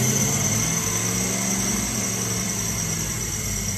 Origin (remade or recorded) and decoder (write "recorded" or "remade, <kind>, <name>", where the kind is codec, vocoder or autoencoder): recorded